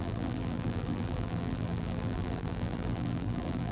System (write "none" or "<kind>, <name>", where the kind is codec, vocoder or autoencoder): vocoder, BigVGAN v2